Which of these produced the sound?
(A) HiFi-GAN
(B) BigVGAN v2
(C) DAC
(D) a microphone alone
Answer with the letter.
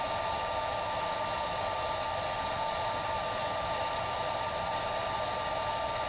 D